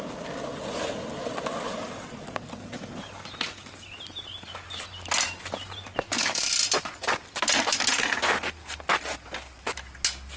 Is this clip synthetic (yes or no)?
no